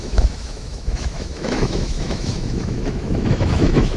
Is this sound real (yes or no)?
no